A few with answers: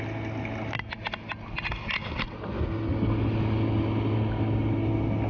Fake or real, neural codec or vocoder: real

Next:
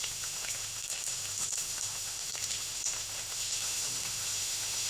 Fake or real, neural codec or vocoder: fake, autoencoder, DAC-VAE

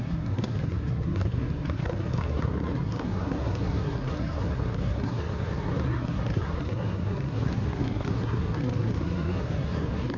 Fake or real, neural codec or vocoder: fake, codec, SNAC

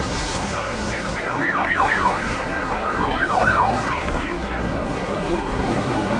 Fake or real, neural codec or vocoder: fake, codec, SNAC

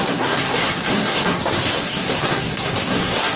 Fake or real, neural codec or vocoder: fake, codec, SNAC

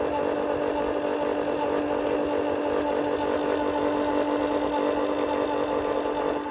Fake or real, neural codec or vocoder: real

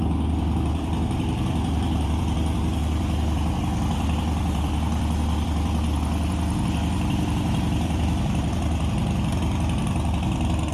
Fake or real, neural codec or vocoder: fake, vocoder, BigVGAN v2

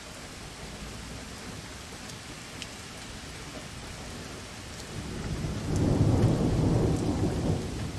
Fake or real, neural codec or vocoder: real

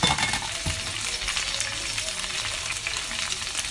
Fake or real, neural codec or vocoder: real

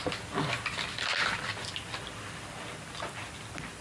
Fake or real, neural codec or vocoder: real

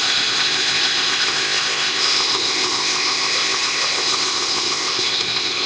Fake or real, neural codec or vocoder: fake, codec, ZipCodec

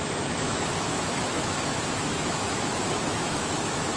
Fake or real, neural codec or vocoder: fake, autoencoder, DAC-VAE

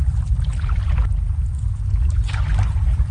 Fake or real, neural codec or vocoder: real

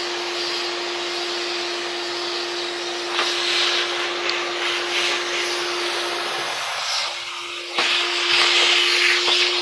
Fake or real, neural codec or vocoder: real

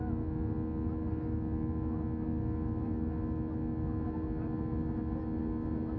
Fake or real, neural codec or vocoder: real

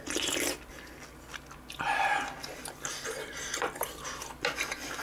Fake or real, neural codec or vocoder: real